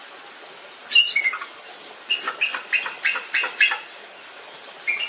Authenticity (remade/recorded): recorded